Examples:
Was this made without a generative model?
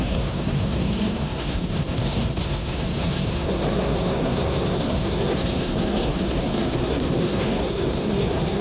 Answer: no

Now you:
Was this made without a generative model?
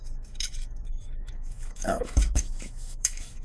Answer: no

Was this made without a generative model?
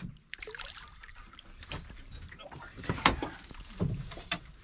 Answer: no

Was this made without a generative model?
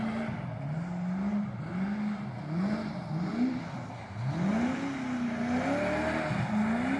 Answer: yes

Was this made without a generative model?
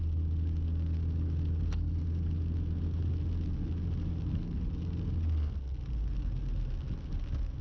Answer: yes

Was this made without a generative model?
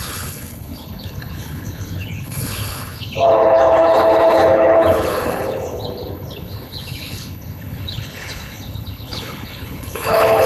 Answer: no